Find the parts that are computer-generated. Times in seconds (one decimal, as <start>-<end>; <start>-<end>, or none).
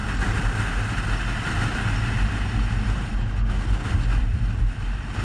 none